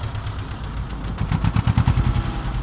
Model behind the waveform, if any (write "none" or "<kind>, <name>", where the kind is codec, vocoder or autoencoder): none